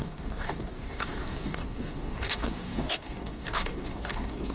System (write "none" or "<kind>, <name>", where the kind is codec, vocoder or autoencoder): codec, DAC